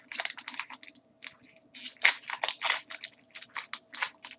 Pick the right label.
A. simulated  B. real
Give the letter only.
B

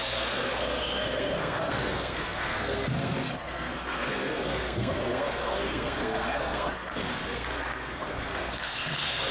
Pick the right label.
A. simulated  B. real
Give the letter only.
A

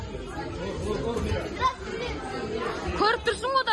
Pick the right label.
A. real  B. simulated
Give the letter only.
A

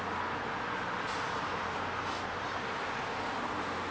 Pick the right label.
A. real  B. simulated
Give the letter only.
A